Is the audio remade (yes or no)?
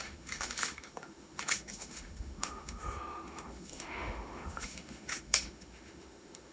yes